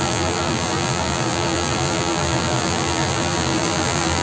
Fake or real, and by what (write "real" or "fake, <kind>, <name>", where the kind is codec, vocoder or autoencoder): fake, vocoder, BigVGAN v2